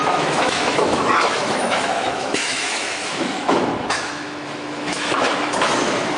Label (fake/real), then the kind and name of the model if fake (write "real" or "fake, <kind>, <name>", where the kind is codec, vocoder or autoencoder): fake, autoencoder, DAC-VAE